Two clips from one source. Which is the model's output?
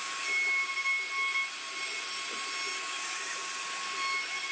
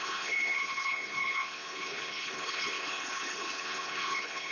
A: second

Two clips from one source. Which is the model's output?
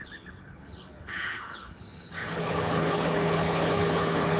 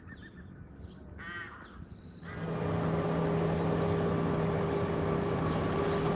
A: first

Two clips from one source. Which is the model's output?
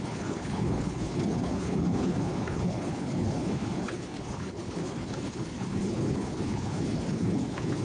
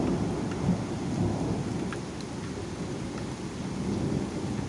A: first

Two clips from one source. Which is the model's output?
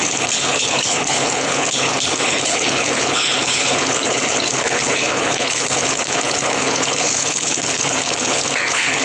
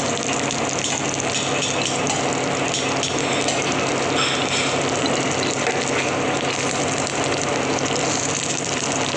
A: first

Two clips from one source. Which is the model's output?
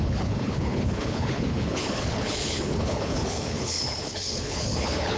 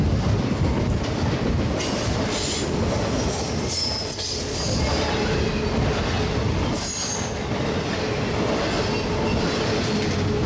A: first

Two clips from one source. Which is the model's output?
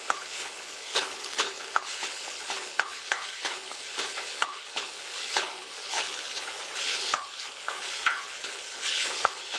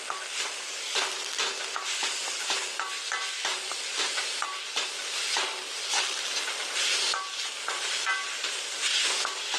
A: first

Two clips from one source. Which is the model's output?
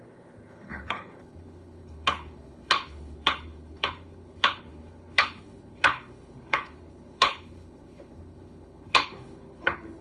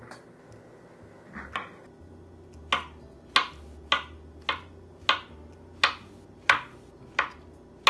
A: first